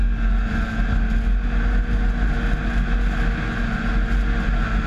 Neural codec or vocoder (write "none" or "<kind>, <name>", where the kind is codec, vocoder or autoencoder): none